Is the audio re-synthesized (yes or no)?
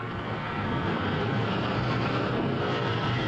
yes